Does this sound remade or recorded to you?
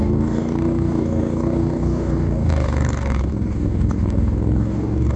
remade